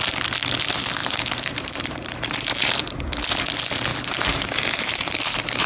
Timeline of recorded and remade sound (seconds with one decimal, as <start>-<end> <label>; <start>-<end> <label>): 0.0-1.0 recorded; 1.0-2.7 remade; 2.7-3.9 recorded; 3.9-5.7 remade